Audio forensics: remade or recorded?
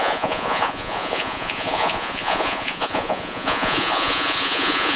remade